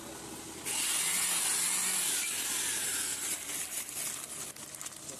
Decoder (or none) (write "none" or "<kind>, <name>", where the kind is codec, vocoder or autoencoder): none